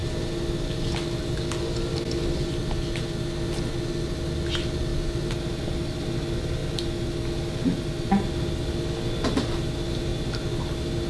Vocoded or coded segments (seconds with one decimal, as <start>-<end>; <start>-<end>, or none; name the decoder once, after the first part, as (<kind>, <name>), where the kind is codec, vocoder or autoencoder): none